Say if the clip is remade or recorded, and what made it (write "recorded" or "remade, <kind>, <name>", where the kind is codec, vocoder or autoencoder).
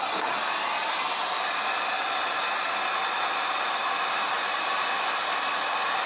recorded